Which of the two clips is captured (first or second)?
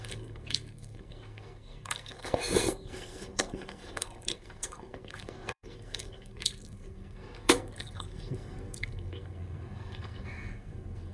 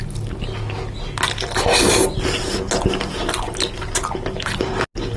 second